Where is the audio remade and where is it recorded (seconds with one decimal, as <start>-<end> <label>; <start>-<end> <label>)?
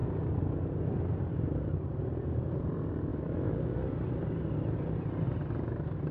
0.0-3.1 recorded; 3.1-3.6 remade; 3.6-6.1 recorded